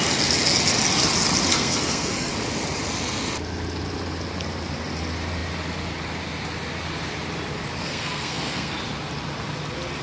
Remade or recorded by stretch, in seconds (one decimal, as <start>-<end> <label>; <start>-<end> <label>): 0.0-1.5 recorded; 1.5-2.3 remade; 2.3-7.8 recorded; 7.8-8.7 remade; 8.7-10.0 recorded